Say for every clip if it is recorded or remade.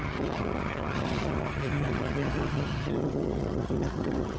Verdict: remade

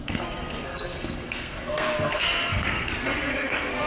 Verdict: remade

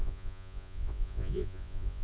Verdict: remade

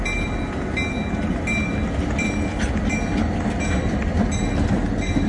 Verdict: recorded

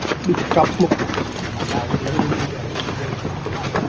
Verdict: recorded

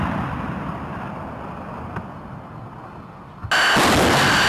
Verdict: recorded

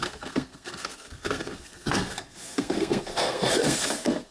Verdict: remade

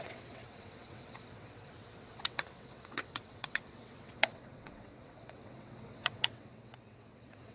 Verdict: remade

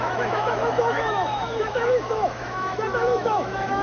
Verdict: remade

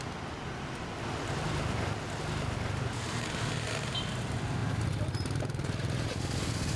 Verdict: recorded